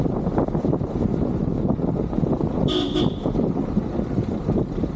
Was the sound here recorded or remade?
recorded